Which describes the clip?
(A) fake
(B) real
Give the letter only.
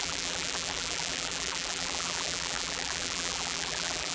A